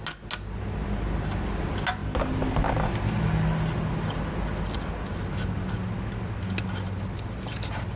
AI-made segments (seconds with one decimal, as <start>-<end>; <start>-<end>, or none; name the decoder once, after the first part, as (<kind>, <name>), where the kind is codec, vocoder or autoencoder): none